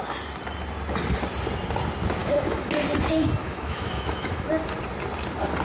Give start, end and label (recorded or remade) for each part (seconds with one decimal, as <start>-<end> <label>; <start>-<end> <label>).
0.0-2.2 recorded; 2.2-2.7 remade; 2.7-3.4 recorded; 3.4-4.5 remade; 4.5-5.6 recorded